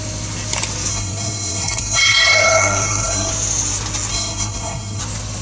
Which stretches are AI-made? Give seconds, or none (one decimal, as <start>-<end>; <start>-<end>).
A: 0.9-3.3; 4.1-5.0